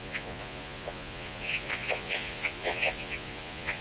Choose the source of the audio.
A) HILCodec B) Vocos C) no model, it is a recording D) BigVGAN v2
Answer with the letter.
B